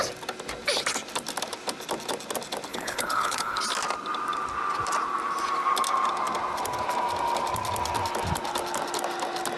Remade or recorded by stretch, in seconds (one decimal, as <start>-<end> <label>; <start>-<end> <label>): 0.0-2.7 recorded; 2.7-3.6 remade; 3.6-9.6 recorded